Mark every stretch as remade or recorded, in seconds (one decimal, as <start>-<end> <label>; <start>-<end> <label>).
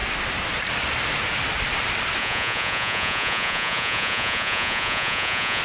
0.0-2.2 recorded; 2.2-5.6 remade